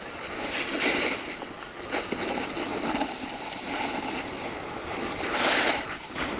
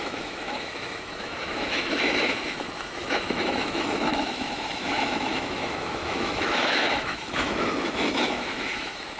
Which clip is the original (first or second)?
first